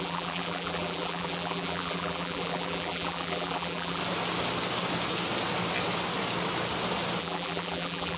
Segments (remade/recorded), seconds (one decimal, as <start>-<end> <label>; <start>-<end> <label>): 0.0-4.0 remade; 4.0-7.2 recorded; 7.2-8.2 remade